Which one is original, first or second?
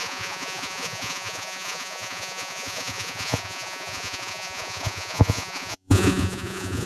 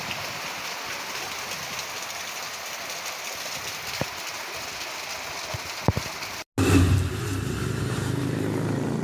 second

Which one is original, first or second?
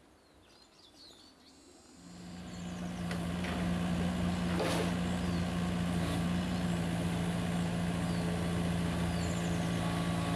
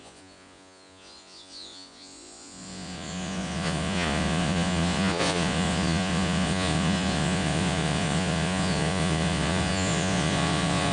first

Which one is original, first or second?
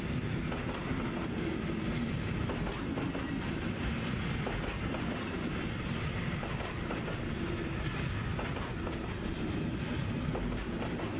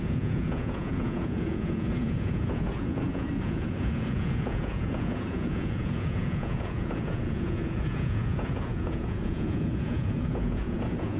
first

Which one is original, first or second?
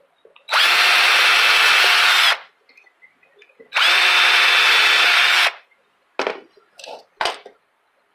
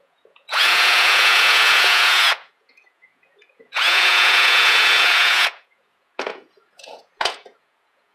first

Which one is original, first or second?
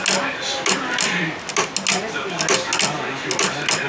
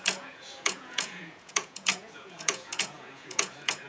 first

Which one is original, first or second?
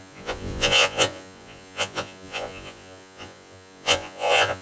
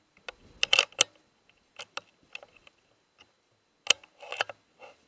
second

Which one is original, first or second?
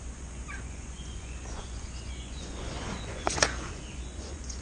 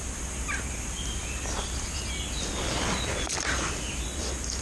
second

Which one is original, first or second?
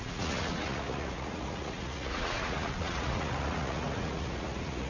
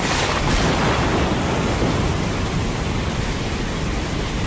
second